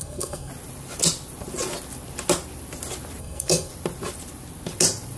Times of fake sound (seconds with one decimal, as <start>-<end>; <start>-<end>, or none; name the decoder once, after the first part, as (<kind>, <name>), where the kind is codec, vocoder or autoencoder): 0.0-0.5 (codec, SNAC); 3.2-3.7